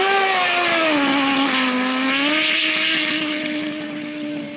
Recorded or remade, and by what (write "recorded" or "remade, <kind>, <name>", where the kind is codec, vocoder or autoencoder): recorded